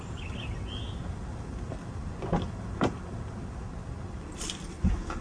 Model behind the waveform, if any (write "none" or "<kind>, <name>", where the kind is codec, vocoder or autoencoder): none